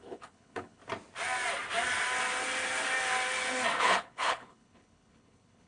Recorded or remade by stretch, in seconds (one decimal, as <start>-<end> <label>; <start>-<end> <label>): 0.0-0.8 remade; 0.8-3.8 recorded; 3.8-5.7 remade